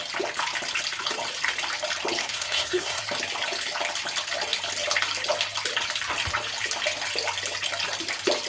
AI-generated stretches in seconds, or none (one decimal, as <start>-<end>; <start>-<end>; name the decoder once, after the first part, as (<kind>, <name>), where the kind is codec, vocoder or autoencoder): 2.2-3.0 (codec, SNAC)